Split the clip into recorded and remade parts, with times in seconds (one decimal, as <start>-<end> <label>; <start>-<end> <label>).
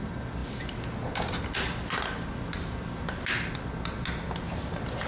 0.0-5.1 recorded